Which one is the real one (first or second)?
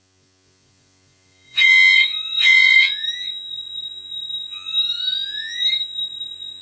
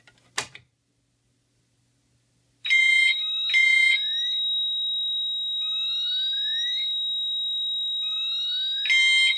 second